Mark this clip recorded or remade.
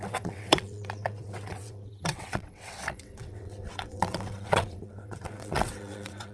remade